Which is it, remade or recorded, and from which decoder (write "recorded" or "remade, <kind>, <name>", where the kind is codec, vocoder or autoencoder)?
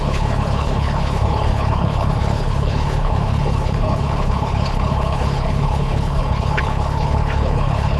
remade, codec, HILCodec